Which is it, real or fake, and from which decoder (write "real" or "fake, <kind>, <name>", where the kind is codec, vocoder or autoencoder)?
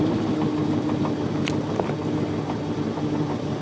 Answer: real